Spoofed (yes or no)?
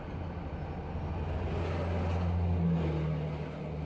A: no